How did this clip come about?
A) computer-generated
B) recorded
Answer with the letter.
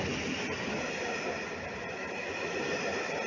B